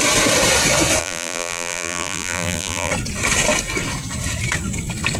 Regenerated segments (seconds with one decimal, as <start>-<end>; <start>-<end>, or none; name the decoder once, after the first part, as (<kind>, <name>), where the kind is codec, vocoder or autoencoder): 1.0-2.9 (vocoder, BigVGAN v2)

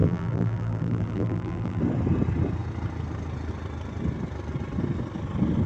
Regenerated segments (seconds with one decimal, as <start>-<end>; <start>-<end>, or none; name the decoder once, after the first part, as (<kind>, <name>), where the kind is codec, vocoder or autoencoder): 0.0-1.8 (vocoder, BigVGAN v2)

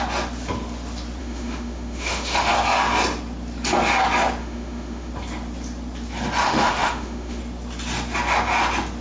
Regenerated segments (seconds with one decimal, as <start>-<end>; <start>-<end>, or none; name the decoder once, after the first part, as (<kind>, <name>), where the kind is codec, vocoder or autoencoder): 1.2-2.5 (autoencoder, DAC-VAE); 4.4-5.1; 6.4-7.4

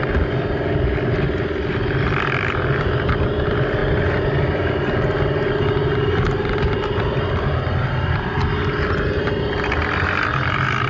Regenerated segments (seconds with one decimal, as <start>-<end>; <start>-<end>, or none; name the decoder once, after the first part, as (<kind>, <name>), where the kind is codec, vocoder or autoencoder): none

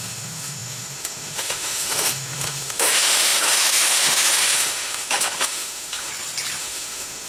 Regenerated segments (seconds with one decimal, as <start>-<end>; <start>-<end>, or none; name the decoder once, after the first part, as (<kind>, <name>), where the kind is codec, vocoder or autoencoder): 0.0-6.1 (autoencoder, DAC-VAE); 6.6-7.3